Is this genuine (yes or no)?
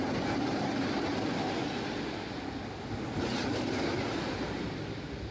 yes